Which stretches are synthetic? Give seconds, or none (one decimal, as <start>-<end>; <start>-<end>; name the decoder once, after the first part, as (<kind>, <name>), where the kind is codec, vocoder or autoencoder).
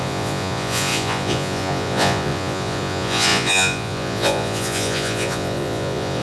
0.0-6.2 (vocoder, Vocos)